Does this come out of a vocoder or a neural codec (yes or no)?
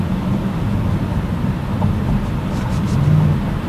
no